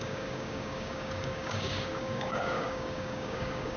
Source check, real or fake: fake